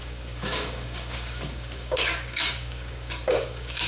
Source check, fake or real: fake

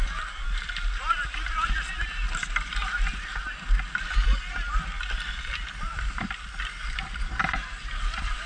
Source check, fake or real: real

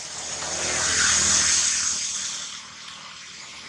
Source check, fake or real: real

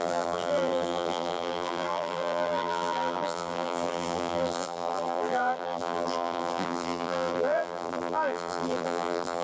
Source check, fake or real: fake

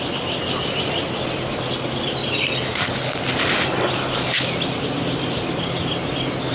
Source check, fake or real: real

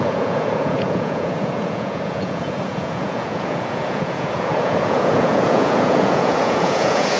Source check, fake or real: fake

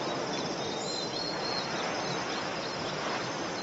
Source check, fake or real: real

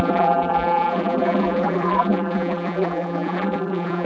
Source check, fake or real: fake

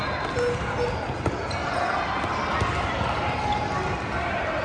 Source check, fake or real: real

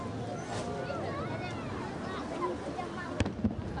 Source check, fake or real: real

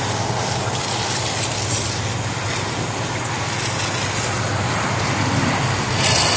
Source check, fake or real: real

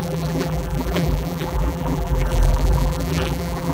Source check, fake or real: fake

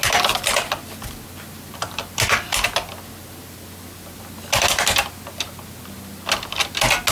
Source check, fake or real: real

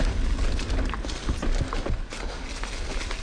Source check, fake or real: real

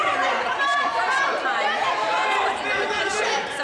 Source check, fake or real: fake